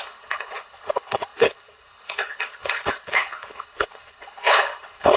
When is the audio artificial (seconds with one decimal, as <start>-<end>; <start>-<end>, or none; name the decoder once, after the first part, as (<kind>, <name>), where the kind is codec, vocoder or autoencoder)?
0.0-5.2 (codec, HILCodec)